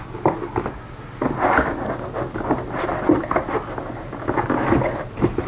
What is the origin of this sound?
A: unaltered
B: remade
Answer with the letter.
A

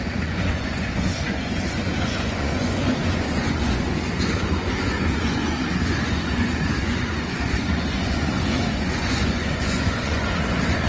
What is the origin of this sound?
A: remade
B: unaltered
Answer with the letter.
A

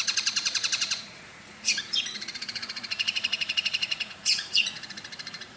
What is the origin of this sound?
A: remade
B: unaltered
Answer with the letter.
A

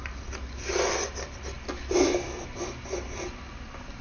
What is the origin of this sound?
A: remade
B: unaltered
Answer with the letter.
B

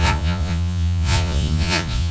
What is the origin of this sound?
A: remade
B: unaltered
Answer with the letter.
A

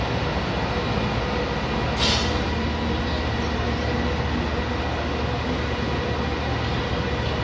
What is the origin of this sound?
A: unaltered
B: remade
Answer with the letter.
A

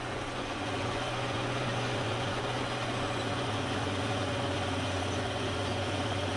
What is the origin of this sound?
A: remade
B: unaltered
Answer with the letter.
A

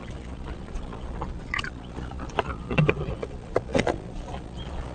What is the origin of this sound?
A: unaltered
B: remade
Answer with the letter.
B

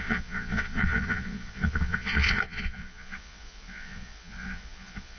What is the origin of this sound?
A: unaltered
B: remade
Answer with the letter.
B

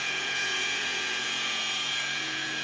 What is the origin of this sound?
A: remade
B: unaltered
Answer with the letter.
A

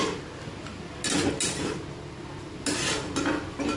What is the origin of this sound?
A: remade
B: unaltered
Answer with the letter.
B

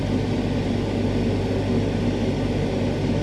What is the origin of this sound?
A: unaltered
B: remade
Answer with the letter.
A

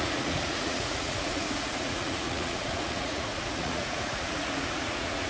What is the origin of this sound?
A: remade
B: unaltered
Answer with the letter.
A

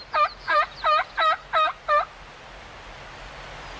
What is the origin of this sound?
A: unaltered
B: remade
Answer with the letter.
A